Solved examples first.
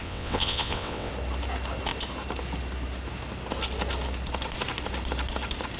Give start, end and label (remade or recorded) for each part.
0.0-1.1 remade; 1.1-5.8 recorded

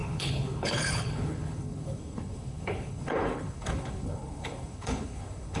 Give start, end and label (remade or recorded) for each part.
0.0-5.6 remade

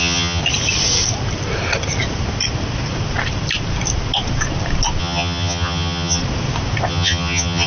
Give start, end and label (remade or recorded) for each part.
0.0-0.4 remade; 0.4-5.0 recorded; 5.0-6.2 remade; 6.2-6.9 recorded; 6.9-7.7 remade

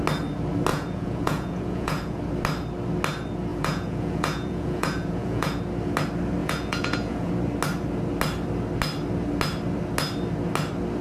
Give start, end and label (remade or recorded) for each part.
0.0-0.7 recorded; 0.7-2.2 remade; 2.2-3.5 recorded; 3.5-5.6 remade; 5.6-6.4 recorded; 6.4-7.3 remade; 7.3-11.0 recorded

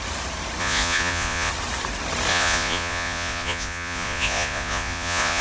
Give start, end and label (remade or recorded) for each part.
0.0-0.6 recorded; 0.6-1.5 remade; 1.5-2.3 recorded; 2.3-5.4 remade

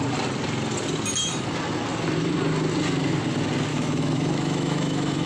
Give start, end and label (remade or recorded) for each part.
0.0-3.7 recorded; 3.7-5.3 remade